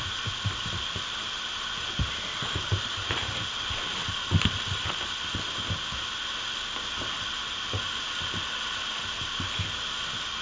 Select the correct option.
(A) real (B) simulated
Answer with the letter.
A